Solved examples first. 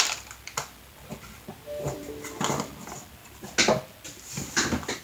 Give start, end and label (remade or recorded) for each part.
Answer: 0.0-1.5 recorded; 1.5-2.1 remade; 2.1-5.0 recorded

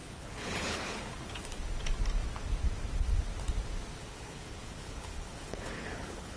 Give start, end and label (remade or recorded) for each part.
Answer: 0.0-1.6 remade; 1.6-4.0 recorded; 4.0-6.4 remade

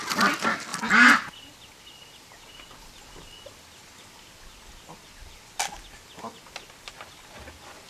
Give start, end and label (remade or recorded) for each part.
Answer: 0.0-7.9 recorded